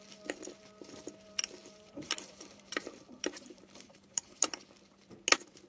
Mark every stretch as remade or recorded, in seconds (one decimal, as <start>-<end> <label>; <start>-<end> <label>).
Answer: 0.0-1.6 recorded; 1.6-4.6 remade; 4.6-5.7 recorded